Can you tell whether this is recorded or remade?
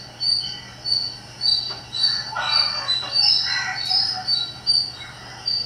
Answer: recorded